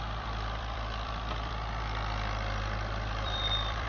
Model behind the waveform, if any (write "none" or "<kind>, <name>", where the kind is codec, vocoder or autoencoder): vocoder, BigVGAN v2